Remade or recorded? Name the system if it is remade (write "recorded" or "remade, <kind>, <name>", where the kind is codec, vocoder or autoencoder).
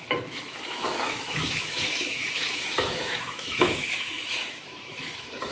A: remade, autoencoder, DAC-VAE